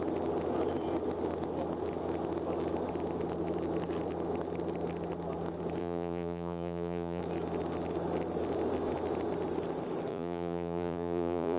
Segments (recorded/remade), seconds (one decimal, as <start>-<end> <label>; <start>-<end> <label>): 0.0-5.8 recorded; 5.8-7.2 remade; 7.2-10.1 recorded; 10.1-11.6 remade